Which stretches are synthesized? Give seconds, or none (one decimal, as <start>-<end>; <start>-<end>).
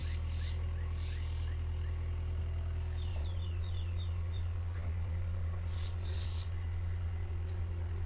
3.1-8.1